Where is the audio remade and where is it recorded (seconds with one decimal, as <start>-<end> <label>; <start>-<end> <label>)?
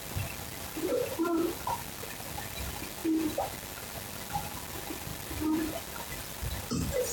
0.0-7.1 recorded